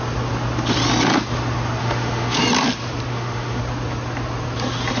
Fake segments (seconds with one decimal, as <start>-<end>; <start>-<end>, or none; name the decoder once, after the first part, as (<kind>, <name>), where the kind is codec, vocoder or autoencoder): 1.8-2.4 (autoencoder, DAC-VAE); 3.1-3.6